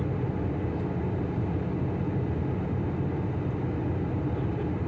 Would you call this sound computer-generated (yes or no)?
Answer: no